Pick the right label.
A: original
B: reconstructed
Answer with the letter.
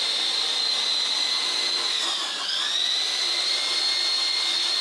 A